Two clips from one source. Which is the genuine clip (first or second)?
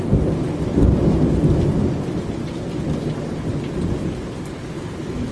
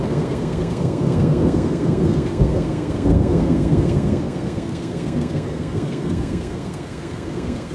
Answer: first